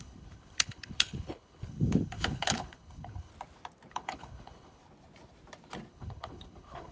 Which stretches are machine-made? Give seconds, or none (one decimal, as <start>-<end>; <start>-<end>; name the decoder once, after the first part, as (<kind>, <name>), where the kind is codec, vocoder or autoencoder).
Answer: 0.0-3.3 (codec, HILCodec); 3.9-4.8; 5.9-6.9